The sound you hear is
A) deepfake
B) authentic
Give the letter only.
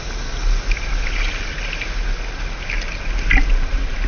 B